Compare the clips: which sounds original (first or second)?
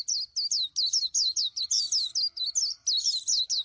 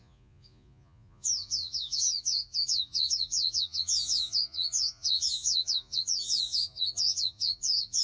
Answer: first